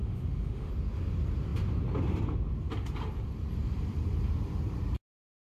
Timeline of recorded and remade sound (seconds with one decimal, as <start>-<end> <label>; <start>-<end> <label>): 0.0-0.7 remade; 0.7-5.4 recorded